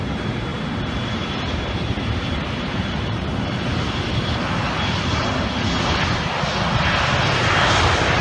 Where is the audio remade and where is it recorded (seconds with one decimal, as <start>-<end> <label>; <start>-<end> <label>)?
0.0-5.3 remade; 5.3-7.5 recorded; 7.5-8.2 remade